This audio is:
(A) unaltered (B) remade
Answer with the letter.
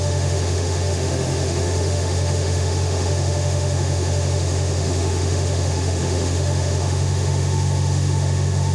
B